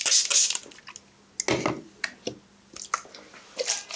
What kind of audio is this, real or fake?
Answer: real